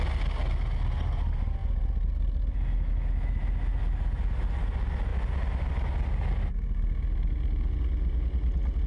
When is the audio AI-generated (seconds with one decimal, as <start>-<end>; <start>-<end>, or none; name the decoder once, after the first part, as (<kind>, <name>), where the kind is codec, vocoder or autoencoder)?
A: none